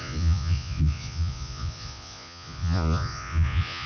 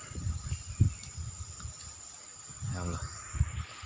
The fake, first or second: first